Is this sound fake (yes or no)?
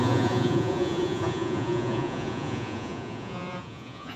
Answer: yes